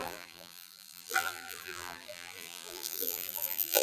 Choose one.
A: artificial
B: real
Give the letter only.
A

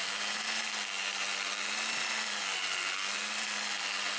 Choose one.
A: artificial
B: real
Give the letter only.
A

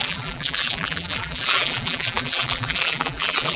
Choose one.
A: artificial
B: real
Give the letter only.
A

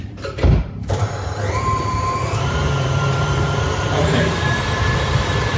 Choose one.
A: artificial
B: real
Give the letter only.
A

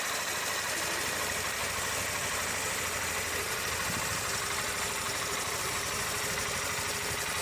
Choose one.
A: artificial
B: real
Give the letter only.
B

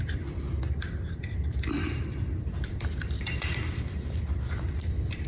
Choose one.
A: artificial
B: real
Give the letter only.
A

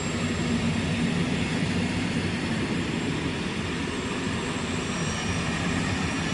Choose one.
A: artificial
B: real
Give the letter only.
B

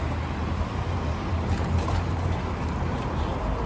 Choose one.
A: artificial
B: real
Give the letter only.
A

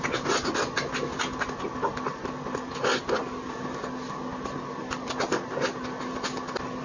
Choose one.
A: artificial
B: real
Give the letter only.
B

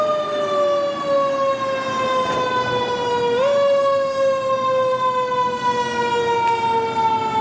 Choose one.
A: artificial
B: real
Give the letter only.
B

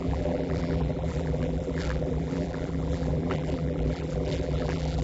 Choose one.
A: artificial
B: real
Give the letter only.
A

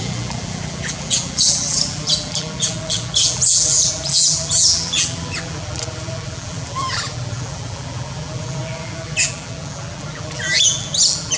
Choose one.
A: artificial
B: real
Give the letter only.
A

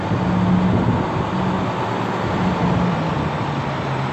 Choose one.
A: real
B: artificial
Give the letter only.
A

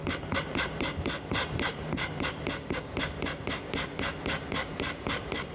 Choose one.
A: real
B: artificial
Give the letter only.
B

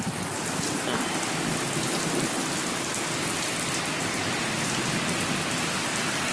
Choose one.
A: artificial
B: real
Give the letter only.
B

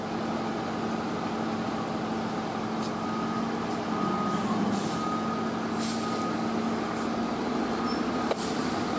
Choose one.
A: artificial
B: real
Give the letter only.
B